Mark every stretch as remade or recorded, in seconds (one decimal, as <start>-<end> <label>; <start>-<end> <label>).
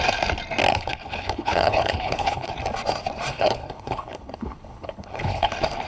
0.0-0.7 recorded; 0.7-2.5 remade; 2.5-3.3 recorded; 3.3-5.5 remade; 5.5-5.9 recorded